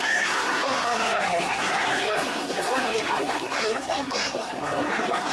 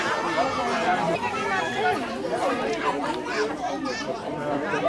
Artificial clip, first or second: first